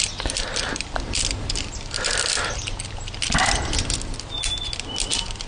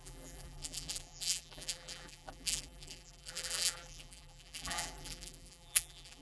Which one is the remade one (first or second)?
second